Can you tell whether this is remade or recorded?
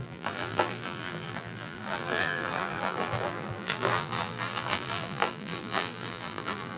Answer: remade